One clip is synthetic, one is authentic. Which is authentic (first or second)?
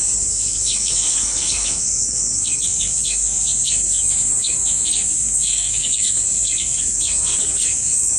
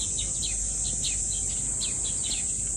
second